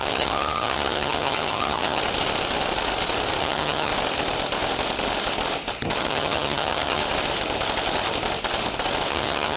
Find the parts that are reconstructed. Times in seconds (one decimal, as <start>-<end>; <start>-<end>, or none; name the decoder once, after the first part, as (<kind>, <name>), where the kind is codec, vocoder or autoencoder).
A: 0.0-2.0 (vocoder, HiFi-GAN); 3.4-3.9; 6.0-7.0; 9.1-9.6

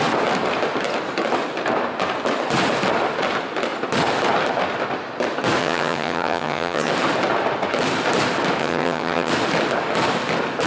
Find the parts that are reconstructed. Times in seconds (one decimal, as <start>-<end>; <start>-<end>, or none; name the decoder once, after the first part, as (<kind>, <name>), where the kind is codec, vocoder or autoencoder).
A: 5.6-6.9 (vocoder, HiFi-GAN); 8.6-9.3

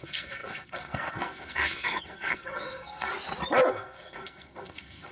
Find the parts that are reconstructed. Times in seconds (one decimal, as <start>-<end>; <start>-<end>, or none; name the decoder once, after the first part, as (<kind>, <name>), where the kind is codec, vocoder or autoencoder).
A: 0.0-3.1 (codec, SNAC); 3.7-5.1

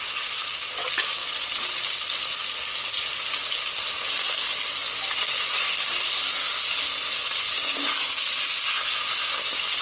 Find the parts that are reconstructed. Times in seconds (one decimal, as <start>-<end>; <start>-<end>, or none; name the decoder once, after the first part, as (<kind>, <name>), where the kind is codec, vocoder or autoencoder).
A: none